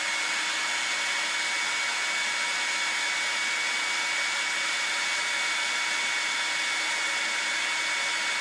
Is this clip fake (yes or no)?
no